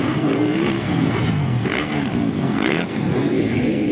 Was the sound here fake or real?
fake